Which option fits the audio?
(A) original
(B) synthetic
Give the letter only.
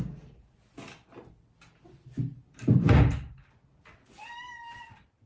A